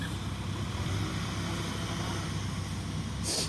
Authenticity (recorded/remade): recorded